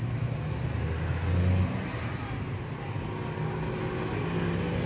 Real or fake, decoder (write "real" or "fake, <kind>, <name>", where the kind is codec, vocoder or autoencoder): real